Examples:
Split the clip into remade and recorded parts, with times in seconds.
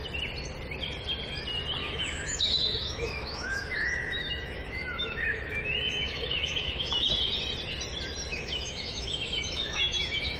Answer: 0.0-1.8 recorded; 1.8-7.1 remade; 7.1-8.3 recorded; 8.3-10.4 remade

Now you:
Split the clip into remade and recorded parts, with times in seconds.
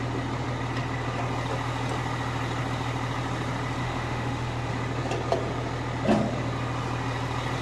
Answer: 0.0-3.8 recorded; 3.8-4.7 remade; 4.7-7.6 recorded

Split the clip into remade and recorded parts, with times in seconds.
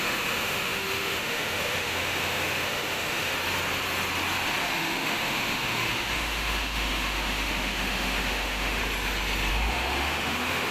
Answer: 0.0-3.4 remade; 3.4-4.7 recorded; 4.7-8.8 remade; 8.8-9.5 recorded; 9.5-10.7 remade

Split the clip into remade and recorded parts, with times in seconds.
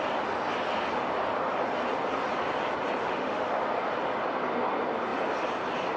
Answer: 0.0-3.0 recorded; 3.0-3.5 remade; 3.5-6.0 recorded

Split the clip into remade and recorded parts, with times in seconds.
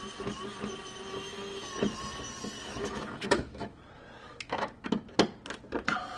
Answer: 0.0-2.6 recorded; 2.6-3.8 remade; 3.8-4.2 recorded; 4.2-4.9 remade; 4.9-6.2 recorded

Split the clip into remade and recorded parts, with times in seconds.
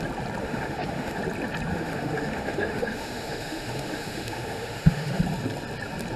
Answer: 0.0-0.4 recorded; 0.4-1.2 remade; 1.2-1.7 recorded; 1.7-5.2 remade; 5.2-6.2 recorded